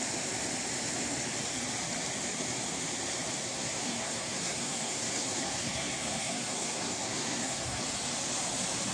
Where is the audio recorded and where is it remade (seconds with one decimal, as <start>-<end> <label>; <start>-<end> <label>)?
0.0-3.4 recorded; 3.4-7.8 remade; 7.8-8.9 recorded